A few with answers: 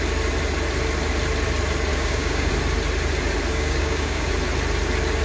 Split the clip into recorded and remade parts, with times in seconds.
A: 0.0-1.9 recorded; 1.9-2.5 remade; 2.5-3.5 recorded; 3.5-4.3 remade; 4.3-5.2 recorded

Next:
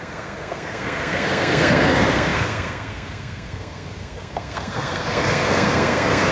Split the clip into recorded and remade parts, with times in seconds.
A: 0.0-6.3 remade

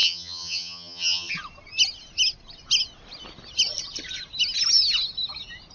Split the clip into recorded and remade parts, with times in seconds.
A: 0.0-1.3 remade; 1.3-5.7 recorded

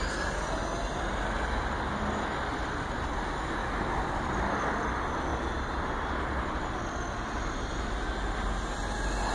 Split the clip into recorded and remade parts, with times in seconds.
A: 0.0-9.3 recorded

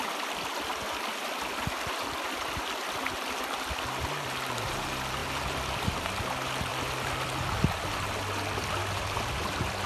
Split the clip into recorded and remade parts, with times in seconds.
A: 0.0-0.7 recorded; 0.7-1.5 remade; 1.5-5.2 recorded; 5.2-5.8 remade; 5.8-6.7 recorded; 6.7-7.3 remade; 7.3-9.9 recorded

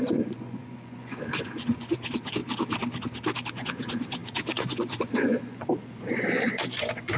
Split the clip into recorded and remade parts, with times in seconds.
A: 0.0-2.4 remade; 2.4-3.5 recorded; 3.5-7.2 remade

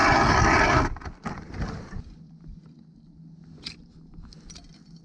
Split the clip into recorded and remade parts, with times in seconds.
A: 0.0-5.0 recorded

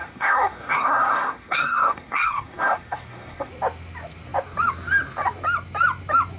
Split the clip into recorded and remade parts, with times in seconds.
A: 0.0-3.5 remade; 3.5-6.4 recorded